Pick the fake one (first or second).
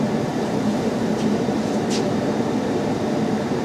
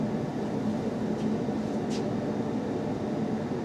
first